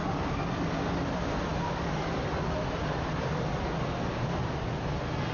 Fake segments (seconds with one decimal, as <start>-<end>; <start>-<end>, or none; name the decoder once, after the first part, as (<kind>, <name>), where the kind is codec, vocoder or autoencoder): none